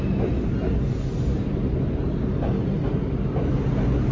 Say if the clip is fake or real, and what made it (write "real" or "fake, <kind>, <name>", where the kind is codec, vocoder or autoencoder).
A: real